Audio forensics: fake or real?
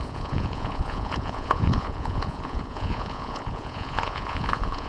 fake